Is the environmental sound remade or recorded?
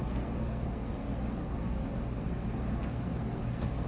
remade